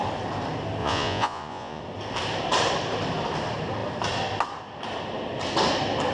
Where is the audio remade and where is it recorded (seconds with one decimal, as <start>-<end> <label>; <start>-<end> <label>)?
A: 0.0-0.8 recorded; 0.8-1.8 remade; 1.8-6.1 recorded

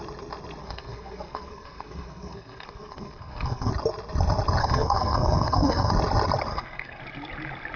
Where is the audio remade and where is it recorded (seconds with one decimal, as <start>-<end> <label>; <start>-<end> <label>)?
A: 0.0-0.6 recorded; 0.6-3.7 remade; 3.7-4.6 recorded; 4.6-5.9 remade; 5.9-6.5 recorded; 6.5-7.0 remade; 7.0-7.8 recorded